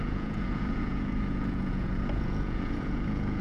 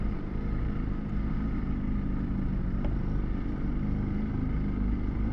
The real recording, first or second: second